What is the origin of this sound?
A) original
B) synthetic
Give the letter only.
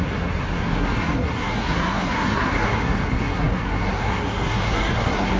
B